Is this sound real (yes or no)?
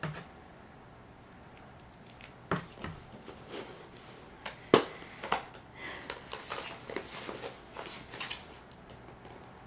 yes